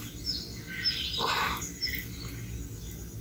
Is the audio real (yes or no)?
yes